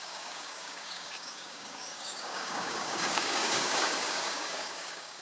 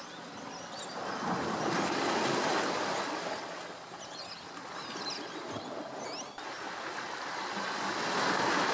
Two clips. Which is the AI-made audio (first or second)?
first